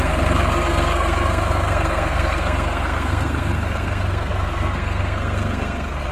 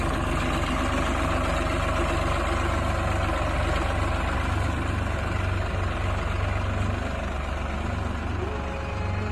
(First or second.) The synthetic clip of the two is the first